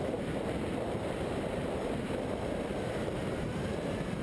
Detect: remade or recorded remade